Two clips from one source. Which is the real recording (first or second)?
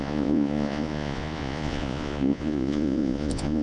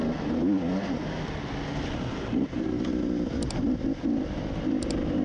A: second